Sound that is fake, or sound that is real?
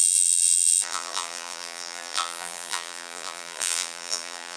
fake